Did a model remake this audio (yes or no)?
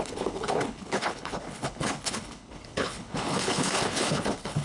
yes